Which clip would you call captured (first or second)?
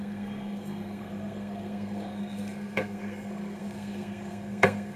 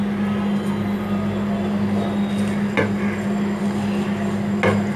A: second